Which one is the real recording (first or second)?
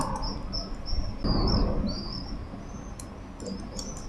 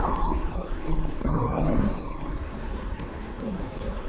first